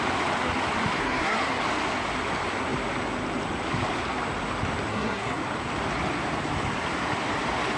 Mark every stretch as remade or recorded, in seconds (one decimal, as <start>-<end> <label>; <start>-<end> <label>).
0.0-1.0 recorded; 1.0-1.6 remade; 1.6-4.9 recorded; 4.9-5.4 remade; 5.4-7.8 recorded